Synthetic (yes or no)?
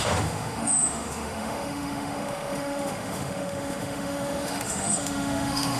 yes